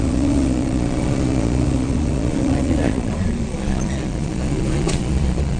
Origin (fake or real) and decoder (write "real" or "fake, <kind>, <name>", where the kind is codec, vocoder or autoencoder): fake, vocoder, Vocos